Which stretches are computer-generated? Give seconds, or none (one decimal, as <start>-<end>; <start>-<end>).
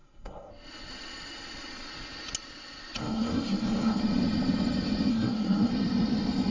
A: 0.0-0.5; 3.0-4.0; 5.1-5.7